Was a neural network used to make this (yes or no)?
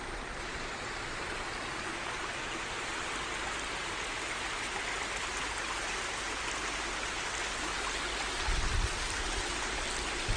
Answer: no